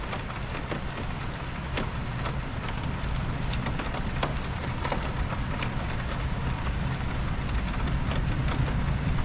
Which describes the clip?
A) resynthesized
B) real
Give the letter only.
B